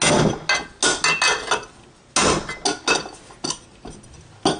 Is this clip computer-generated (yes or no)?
no